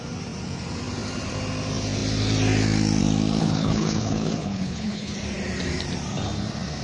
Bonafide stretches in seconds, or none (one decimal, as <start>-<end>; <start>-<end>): 0.0-3.4; 5.1-6.8